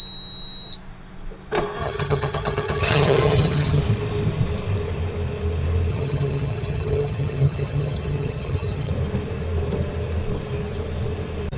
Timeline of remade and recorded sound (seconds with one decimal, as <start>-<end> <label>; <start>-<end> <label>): 0.0-1.8 recorded; 1.8-3.8 remade; 3.8-5.9 recorded; 5.9-8.9 remade; 8.9-11.6 recorded